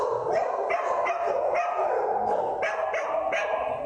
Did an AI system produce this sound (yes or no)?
no